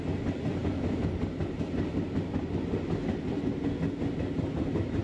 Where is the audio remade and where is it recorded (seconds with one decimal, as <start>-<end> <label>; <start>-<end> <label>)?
0.0-5.0 recorded